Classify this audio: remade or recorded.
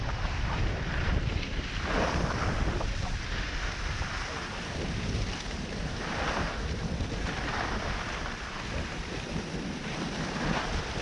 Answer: remade